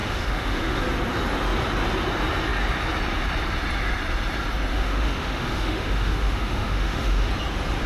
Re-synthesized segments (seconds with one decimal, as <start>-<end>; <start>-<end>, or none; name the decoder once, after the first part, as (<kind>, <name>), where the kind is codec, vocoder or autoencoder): 0.0-0.8 (autoencoder, DAC-VAE); 4.7-7.3